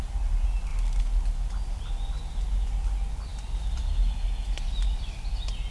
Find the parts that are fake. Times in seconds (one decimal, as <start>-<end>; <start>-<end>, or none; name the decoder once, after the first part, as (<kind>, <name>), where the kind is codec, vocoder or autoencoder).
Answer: none